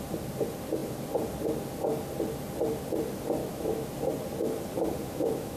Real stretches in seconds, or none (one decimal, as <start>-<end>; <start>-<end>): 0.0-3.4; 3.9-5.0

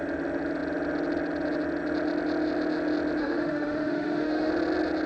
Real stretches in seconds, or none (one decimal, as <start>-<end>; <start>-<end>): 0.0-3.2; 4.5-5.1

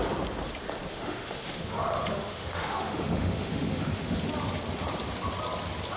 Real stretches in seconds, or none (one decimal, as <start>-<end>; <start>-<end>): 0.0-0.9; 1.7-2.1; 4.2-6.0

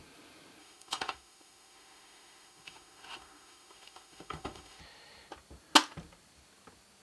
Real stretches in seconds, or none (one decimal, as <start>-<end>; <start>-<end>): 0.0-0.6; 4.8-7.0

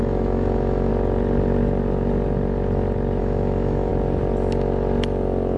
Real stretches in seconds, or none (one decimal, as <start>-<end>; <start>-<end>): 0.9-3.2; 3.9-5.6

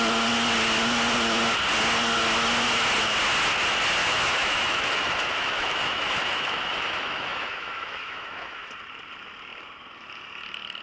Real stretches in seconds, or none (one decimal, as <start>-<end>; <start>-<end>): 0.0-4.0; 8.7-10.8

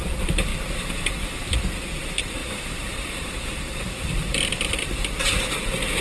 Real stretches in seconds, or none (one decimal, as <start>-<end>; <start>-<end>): 0.0-6.0